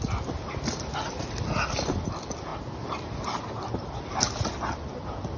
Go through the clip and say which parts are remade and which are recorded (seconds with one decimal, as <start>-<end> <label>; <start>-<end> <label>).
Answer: 0.0-5.4 recorded

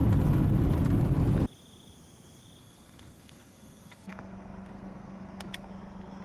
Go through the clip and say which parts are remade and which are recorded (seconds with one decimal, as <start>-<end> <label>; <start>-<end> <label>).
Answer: 0.0-2.6 recorded; 2.6-5.7 remade; 5.7-6.2 recorded

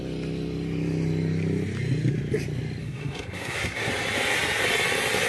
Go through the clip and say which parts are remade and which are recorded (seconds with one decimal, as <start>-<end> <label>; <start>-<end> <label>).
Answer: 0.0-2.8 recorded; 2.8-3.9 remade; 3.9-5.3 recorded